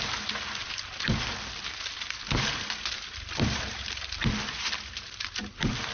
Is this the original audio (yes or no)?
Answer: yes